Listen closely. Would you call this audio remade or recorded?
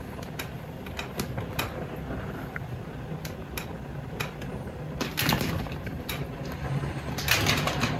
recorded